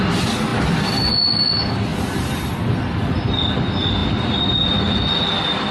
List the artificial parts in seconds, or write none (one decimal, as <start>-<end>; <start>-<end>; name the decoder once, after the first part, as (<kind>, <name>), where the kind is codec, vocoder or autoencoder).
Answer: none